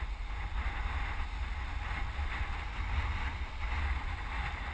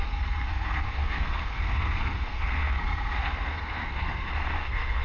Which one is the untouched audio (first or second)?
first